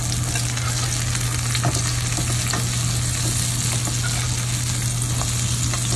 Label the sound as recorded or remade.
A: recorded